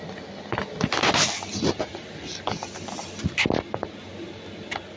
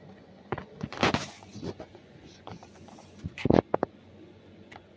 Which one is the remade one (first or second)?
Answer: second